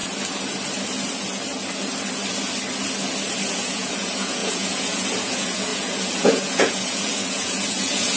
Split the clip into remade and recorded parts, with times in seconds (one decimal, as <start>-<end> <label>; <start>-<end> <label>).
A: 0.0-3.5 recorded; 3.5-8.2 remade